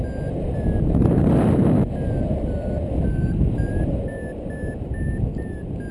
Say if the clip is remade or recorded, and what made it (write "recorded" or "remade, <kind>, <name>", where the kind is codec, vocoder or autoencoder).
recorded